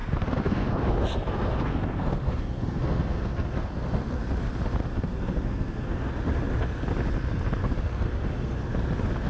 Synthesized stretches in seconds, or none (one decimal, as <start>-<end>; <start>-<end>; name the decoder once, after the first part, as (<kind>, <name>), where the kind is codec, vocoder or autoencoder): 0.0-4.2 (codec, SNAC); 4.8-6.1; 7.6-8.6